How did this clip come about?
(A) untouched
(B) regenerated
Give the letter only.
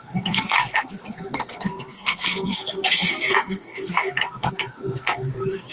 B